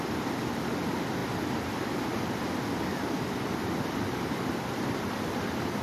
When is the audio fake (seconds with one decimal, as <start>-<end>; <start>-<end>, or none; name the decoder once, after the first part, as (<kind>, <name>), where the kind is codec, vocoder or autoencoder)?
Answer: 0.0-1.2 (vocoder, BigVGAN v2); 2.1-5.8